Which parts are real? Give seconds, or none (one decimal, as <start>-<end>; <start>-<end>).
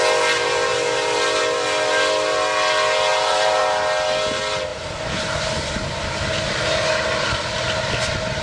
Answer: 0.0-3.1; 3.6-4.7; 5.2-8.4